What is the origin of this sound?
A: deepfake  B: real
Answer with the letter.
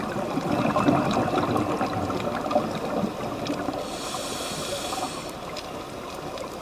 B